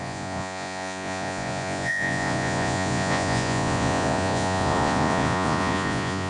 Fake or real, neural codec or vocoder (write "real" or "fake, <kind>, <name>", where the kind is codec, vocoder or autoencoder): fake, vocoder, Vocos